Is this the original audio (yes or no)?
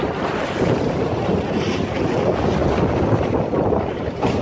yes